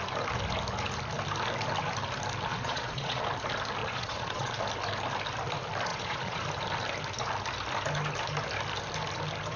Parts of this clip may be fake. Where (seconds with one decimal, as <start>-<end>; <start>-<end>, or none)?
2.5-3.2; 3.8-4.5; 5.9-6.4